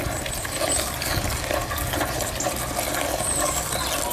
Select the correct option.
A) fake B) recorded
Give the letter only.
B